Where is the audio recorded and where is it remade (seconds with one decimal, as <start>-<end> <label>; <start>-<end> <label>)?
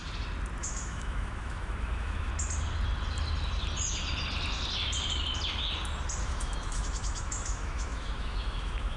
0.0-0.6 recorded; 0.6-2.3 remade; 2.3-6.2 recorded; 6.2-9.0 remade